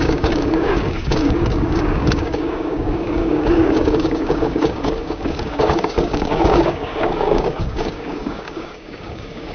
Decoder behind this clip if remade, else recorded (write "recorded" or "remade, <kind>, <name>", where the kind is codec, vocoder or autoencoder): remade, codec, DAC